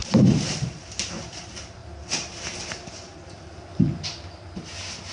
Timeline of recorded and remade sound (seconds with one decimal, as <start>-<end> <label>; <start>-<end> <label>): 0.0-1.4 remade; 1.4-1.8 recorded; 1.8-5.1 remade